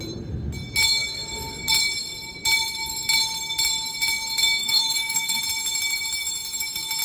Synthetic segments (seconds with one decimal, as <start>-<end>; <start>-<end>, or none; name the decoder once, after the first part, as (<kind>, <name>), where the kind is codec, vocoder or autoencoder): 4.6-5.4 (codec, DAC)